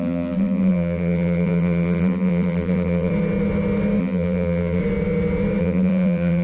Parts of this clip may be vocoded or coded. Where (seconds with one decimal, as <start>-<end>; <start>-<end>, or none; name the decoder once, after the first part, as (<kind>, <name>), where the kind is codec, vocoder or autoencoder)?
0.0-3.1 (vocoder, BigVGAN v2); 4.0-4.8; 5.6-6.4